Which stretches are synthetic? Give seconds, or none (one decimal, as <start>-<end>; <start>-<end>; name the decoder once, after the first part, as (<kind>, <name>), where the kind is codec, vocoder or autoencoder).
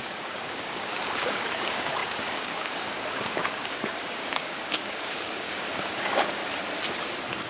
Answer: 0.0-6.4 (codec, DAC)